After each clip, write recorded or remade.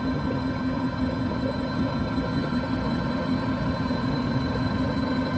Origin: remade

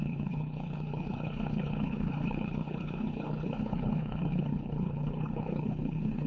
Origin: remade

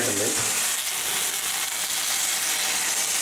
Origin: recorded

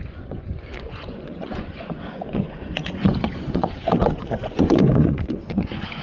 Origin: remade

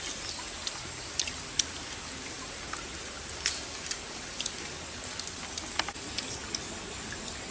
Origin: recorded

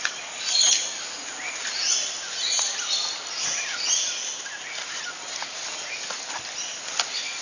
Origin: recorded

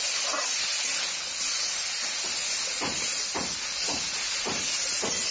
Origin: recorded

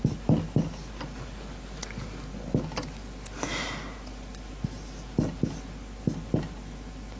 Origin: recorded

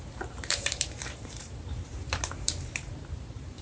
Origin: remade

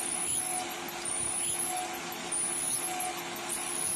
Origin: recorded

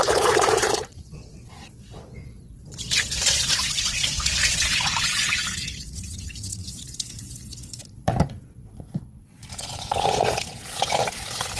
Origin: remade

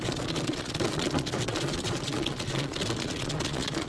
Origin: remade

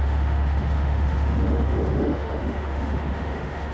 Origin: remade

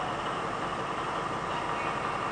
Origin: recorded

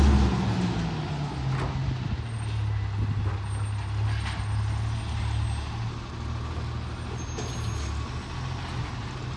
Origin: recorded